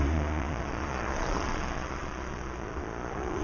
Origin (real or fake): fake